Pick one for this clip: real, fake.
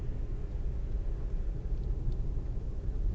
real